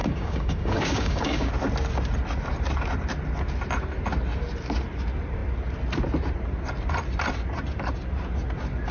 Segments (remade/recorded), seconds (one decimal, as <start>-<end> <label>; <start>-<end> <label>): 0.0-1.5 remade; 1.5-8.9 recorded